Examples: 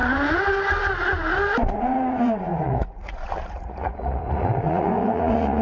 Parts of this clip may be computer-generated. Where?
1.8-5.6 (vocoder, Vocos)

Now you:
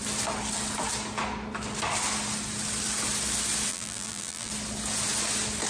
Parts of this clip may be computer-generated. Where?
3.7-4.5 (vocoder, BigVGAN v2)

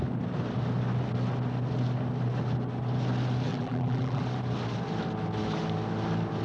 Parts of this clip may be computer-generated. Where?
3.5-4.2 (vocoder, BigVGAN v2)

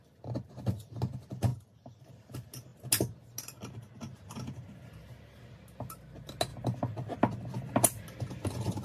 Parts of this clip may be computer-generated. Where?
1.5-2.1 (vocoder, BigVGAN v2)

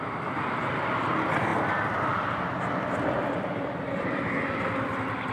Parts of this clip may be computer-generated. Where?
0.0-1.5 (vocoder, BigVGAN v2); 3.1-5.3

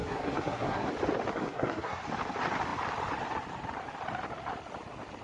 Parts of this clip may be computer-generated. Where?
0.0-0.9 (codec, SNAC); 1.3-2.0

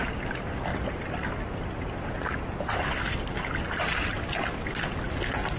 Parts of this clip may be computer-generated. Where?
0.7-4.1 (vocoder, BigVGAN v2)